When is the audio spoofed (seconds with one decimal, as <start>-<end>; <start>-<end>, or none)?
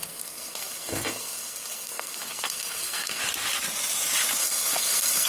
0.0-3.2; 4.4-5.3